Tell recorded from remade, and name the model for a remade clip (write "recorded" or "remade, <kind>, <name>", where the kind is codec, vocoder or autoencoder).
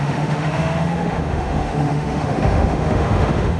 remade, autoencoder, DAC-VAE